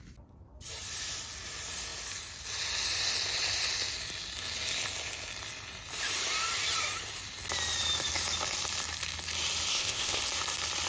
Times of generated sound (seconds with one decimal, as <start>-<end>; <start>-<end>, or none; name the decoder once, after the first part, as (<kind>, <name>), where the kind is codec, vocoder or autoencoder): 9.7-10.2 (codec, ZipCodec)